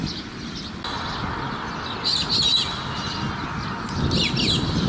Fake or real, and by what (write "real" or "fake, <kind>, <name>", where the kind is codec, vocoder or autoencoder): real